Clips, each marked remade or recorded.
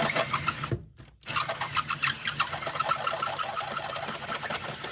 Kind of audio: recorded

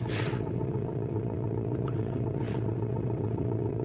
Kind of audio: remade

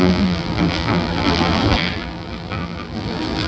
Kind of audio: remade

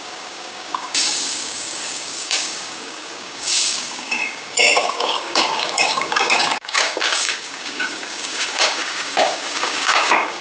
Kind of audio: remade